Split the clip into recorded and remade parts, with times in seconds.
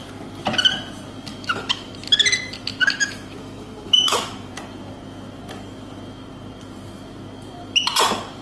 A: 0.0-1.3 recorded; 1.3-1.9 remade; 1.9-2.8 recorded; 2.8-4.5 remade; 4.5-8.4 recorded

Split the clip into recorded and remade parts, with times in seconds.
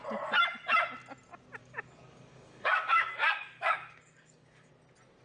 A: 0.0-1.6 recorded; 1.6-4.7 remade; 4.7-5.2 recorded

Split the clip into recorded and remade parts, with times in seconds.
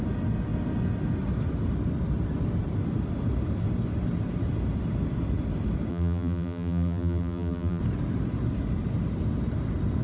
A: 0.0-5.9 recorded; 5.9-7.8 remade; 7.8-10.0 recorded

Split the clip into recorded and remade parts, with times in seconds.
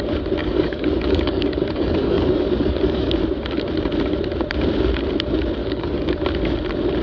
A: 0.0-0.4 recorded; 0.4-3.1 remade; 3.1-5.6 recorded; 5.6-6.2 remade; 6.2-7.0 recorded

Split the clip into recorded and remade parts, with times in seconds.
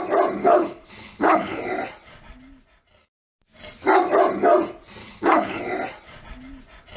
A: 0.0-0.4 recorded; 0.4-1.6 remade; 1.6-5.0 recorded; 5.0-5.6 remade; 5.6-7.0 recorded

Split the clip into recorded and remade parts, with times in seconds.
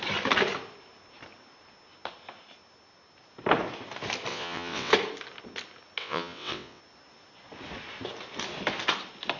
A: 0.0-4.3 recorded; 4.3-4.9 remade; 4.9-6.0 recorded; 6.0-6.8 remade; 6.8-9.4 recorded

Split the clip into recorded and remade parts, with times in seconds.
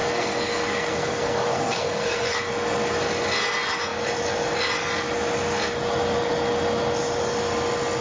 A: 0.0-2.5 remade; 2.5-8.0 recorded